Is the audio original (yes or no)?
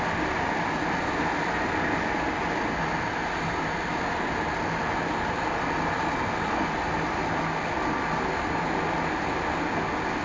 yes